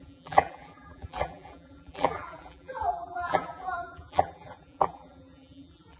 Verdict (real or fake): fake